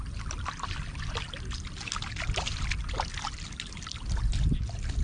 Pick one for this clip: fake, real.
real